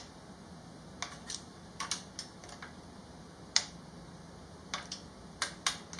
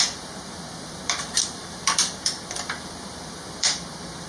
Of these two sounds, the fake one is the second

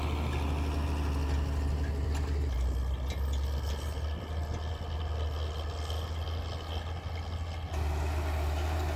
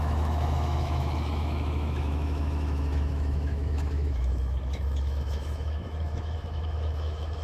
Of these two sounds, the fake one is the second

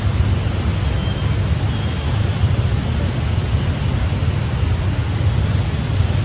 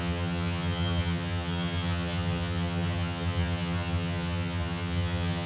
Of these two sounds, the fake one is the second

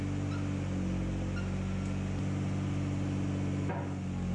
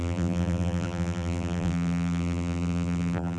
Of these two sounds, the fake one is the second